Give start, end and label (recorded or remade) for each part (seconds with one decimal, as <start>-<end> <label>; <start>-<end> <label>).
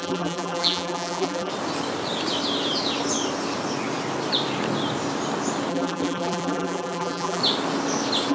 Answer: 0.0-1.5 remade; 1.5-5.7 recorded; 5.7-7.4 remade; 7.4-8.3 recorded